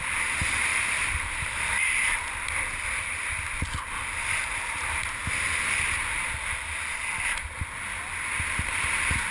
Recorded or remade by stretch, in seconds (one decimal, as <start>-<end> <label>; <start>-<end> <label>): 0.0-0.7 recorded; 0.7-1.7 remade; 1.7-9.3 recorded